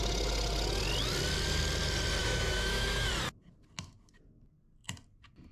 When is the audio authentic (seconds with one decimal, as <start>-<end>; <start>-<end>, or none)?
0.0-2.2; 3.1-5.5